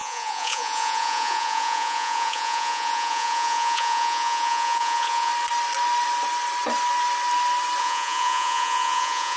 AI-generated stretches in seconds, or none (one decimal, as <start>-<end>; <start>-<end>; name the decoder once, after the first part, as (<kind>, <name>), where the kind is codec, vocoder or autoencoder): 0.0-5.3 (vocoder, Vocos); 7.8-9.4